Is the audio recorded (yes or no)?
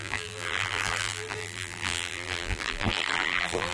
no